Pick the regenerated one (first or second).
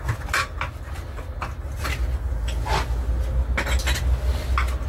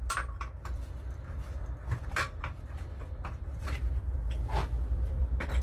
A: second